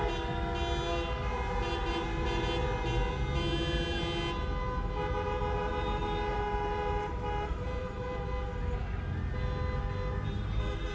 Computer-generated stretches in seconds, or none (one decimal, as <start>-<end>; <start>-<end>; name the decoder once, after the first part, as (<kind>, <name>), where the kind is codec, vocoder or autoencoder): 6.3-8.2 (vocoder, BigVGAN v2)